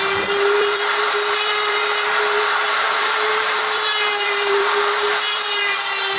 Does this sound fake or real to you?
fake